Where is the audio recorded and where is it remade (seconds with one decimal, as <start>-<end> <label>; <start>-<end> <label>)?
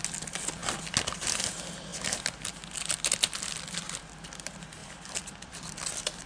0.0-6.3 recorded